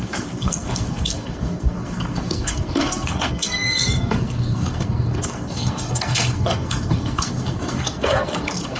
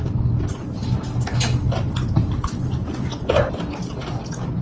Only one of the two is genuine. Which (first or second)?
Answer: second